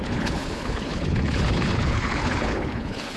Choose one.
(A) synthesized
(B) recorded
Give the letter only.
A